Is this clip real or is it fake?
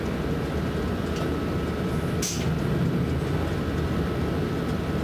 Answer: real